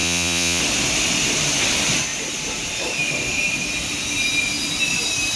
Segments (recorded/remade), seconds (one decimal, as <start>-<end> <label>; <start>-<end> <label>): 0.0-0.6 remade; 0.6-5.4 recorded